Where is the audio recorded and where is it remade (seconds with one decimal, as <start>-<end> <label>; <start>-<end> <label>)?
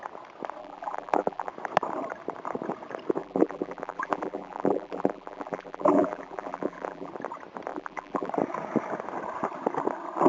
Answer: 0.0-0.6 recorded; 0.6-1.5 remade; 1.5-3.2 recorded; 3.2-7.1 remade; 7.1-7.7 recorded; 7.7-8.3 remade; 8.3-10.3 recorded